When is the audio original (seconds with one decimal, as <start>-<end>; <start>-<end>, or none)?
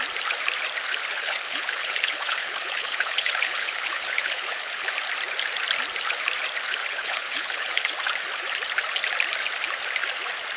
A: 0.0-1.0; 4.9-6.8; 7.9-10.6